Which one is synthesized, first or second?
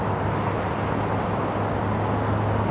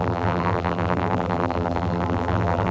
second